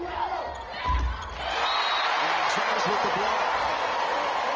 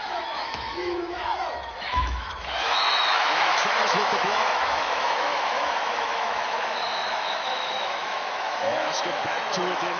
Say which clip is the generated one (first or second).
second